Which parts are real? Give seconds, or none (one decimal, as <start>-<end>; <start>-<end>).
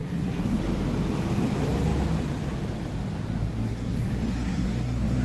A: 0.6-3.5